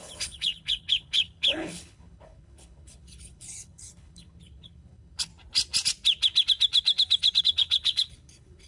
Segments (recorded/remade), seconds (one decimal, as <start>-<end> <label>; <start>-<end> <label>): 0.0-5.3 remade; 5.3-7.4 recorded; 7.4-8.7 remade